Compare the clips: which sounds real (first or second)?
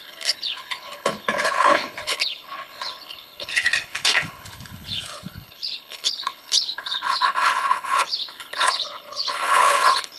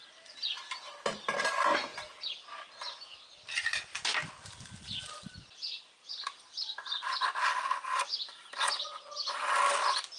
second